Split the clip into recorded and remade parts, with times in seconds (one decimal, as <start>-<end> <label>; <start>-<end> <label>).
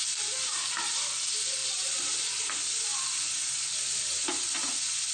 0.0-5.1 recorded